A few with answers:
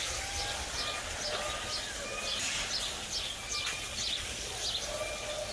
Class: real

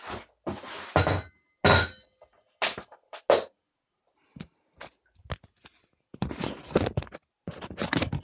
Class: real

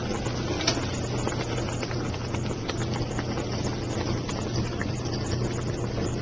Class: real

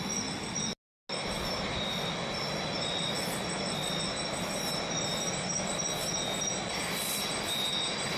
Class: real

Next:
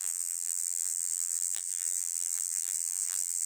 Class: fake